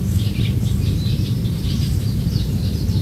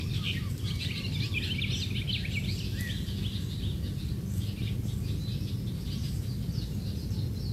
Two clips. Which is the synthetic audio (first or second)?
first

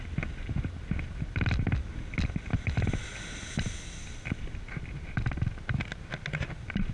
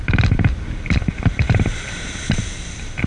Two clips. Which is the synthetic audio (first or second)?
second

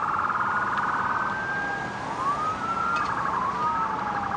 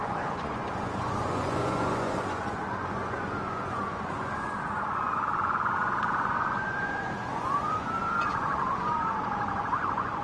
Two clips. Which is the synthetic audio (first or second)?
second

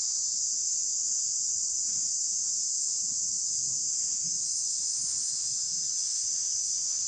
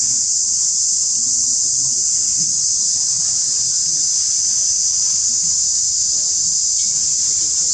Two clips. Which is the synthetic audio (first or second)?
first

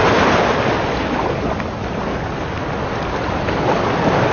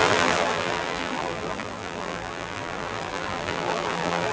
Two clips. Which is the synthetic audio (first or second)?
second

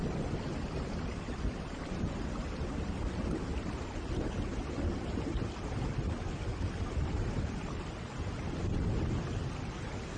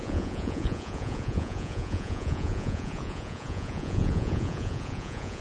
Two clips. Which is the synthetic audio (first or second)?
second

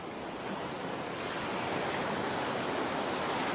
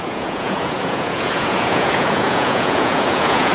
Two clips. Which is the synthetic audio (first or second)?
second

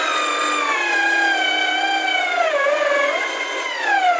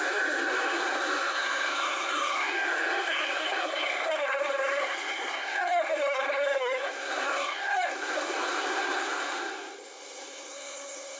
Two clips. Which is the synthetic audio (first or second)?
second